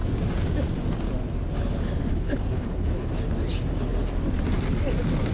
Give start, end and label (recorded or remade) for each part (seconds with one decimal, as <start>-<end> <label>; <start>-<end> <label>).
0.0-2.1 recorded; 2.1-3.1 remade; 3.1-5.3 recorded